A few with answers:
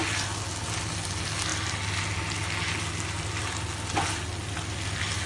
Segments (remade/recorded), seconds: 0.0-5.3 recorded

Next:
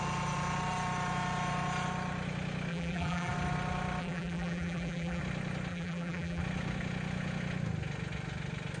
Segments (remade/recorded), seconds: 0.0-2.7 recorded; 2.7-3.3 remade; 3.3-4.0 recorded; 4.0-5.2 remade; 5.2-5.7 recorded; 5.7-6.4 remade; 6.4-8.8 recorded

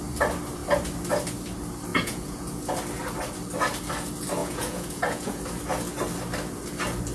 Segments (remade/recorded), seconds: 0.0-1.9 recorded; 1.9-2.6 remade; 2.6-4.4 recorded; 4.4-5.4 remade; 5.4-7.1 recorded

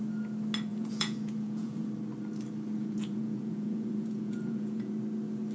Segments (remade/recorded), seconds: 0.0-0.7 recorded; 0.7-1.9 remade; 1.9-2.8 recorded; 2.8-4.9 remade; 4.9-5.5 recorded

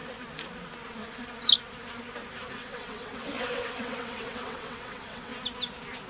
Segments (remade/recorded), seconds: 0.0-2.5 recorded; 2.5-5.3 remade; 5.3-6.1 recorded

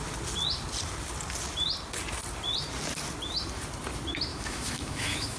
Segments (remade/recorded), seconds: 0.0-4.3 recorded; 4.3-5.4 remade

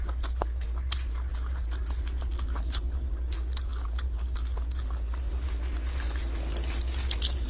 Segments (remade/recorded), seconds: 0.0-7.5 recorded